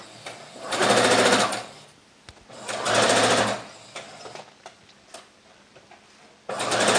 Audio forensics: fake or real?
real